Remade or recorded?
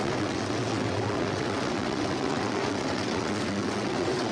remade